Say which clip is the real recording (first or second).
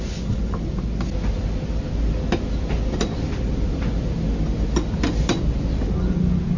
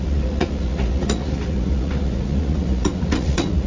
first